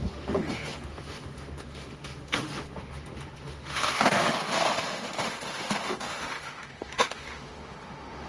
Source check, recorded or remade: remade